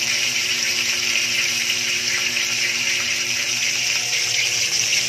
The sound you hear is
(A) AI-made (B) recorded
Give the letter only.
A